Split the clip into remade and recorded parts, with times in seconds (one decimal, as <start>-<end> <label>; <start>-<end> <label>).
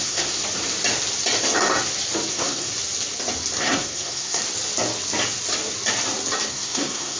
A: 0.0-0.4 remade; 0.4-2.3 recorded; 2.3-2.7 remade; 2.7-3.6 recorded; 3.6-4.4 remade; 4.4-6.5 recorded; 6.5-7.2 remade